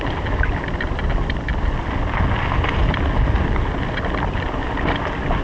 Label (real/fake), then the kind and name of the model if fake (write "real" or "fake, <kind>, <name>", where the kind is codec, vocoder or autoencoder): real